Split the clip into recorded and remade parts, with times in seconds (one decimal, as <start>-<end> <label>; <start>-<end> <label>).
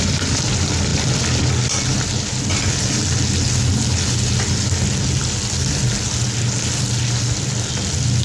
0.0-8.2 recorded